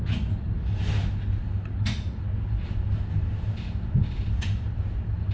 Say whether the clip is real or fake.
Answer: real